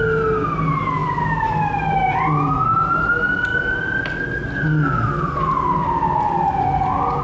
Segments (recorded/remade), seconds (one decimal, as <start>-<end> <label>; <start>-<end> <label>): 0.0-7.2 recorded